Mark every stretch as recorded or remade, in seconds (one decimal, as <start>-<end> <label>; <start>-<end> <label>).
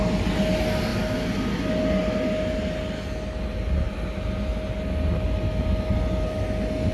0.0-6.9 recorded